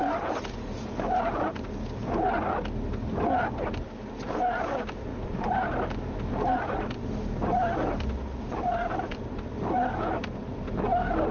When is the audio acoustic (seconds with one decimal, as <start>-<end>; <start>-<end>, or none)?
0.0-11.3